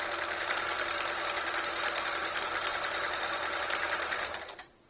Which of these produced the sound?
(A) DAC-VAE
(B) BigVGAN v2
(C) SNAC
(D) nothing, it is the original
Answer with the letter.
D